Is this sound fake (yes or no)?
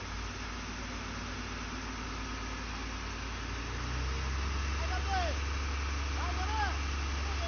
no